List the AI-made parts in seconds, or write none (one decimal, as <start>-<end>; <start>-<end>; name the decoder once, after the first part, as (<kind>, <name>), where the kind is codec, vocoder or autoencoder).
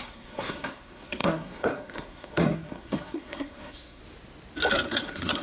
0.0-4.0 (codec, SNAC); 4.7-5.4